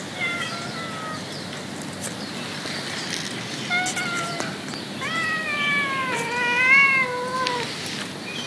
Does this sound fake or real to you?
real